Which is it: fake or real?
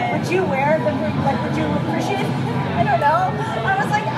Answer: real